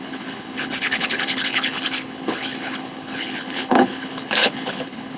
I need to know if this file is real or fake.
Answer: fake